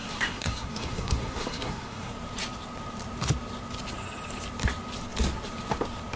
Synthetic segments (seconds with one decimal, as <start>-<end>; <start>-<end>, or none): 0.0-2.1